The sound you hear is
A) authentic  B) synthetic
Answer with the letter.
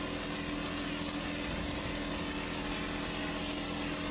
A